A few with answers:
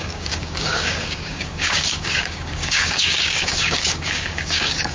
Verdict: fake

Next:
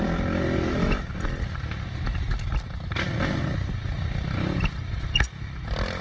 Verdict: real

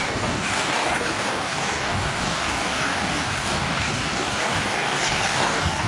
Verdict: fake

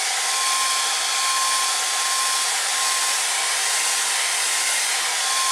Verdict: real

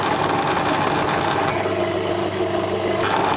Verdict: real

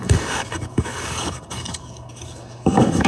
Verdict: fake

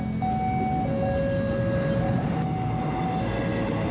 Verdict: real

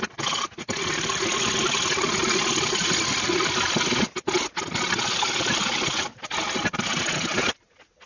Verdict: real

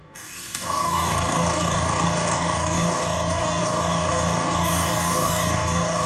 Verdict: fake